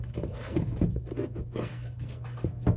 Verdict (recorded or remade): remade